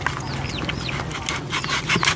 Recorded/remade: recorded